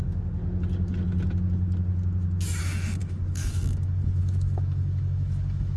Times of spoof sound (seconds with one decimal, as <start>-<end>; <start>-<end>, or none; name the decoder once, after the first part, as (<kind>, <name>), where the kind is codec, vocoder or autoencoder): 0.0-0.4 (autoencoder, DAC-VAE); 2.6-5.8